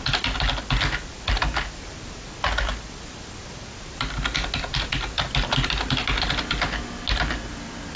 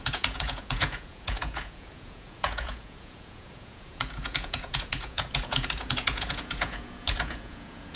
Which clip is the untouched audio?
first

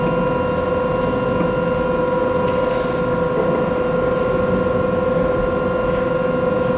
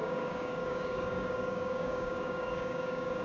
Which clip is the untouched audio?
first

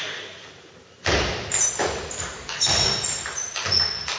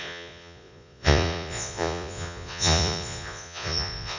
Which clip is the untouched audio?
first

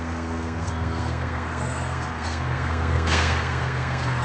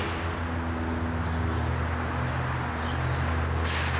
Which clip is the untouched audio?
second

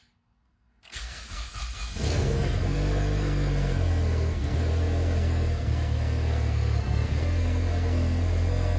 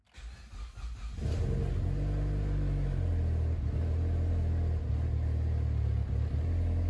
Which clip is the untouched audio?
second